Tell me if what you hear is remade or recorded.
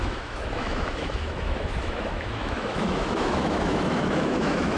remade